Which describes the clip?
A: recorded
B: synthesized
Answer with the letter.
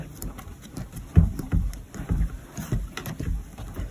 B